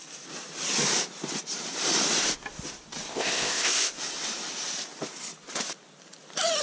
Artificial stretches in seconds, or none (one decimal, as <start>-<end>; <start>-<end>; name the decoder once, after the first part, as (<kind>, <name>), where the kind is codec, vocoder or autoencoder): 3.1-3.9 (codec, ZipCodec)